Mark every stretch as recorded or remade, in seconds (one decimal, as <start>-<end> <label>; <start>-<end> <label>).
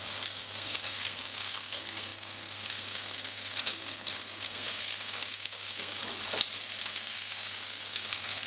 0.0-6.0 remade; 6.0-6.8 recorded; 6.8-8.5 remade